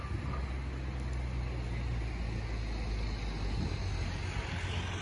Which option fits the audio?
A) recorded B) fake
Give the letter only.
A